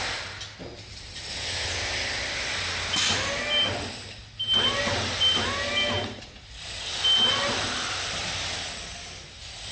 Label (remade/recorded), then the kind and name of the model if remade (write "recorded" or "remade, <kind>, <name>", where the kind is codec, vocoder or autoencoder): recorded